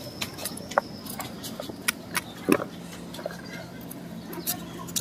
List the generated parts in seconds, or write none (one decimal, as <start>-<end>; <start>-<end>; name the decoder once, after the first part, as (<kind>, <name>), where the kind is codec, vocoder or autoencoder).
none